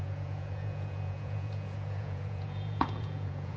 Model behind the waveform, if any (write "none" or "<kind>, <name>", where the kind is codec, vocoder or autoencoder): vocoder, Vocos